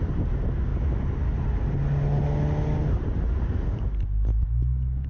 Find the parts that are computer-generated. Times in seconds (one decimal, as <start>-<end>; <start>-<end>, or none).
4.3-5.1